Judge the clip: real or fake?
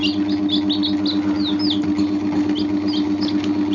real